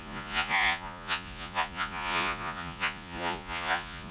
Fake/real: fake